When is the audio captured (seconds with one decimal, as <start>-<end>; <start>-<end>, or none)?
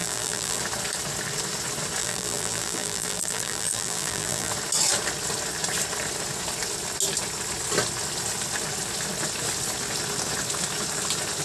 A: 0.6-2.0; 4.5-11.4